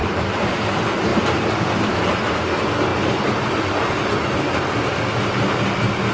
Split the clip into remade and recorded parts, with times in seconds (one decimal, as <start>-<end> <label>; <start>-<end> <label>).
0.0-0.7 remade; 0.7-6.1 recorded